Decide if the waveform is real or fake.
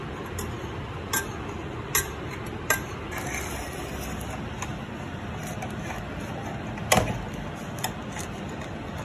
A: real